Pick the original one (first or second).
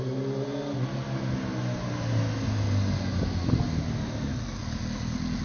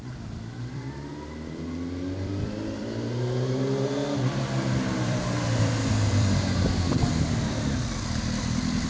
first